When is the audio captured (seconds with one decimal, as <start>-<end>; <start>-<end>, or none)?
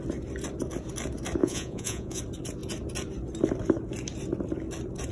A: 0.0-1.4; 2.2-5.1